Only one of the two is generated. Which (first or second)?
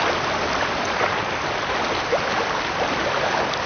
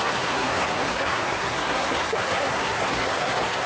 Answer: second